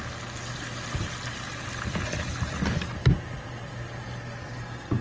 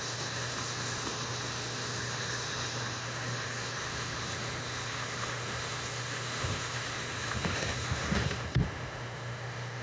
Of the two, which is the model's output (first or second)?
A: second